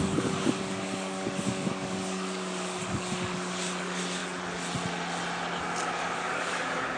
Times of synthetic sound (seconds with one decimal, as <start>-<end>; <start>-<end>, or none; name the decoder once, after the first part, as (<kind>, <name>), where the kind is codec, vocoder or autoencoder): 0.0-4.2 (codec, DAC); 6.0-7.0